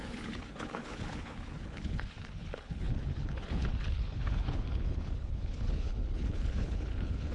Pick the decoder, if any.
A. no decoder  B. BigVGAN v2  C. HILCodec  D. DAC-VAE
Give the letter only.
C